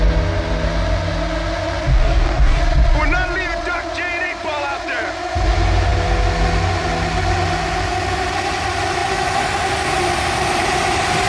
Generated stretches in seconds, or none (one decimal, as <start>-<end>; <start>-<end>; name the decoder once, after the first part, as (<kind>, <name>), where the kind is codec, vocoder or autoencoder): 1.9-2.6 (codec, DAC)